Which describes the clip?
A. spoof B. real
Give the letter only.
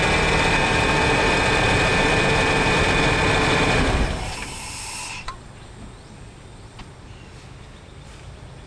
A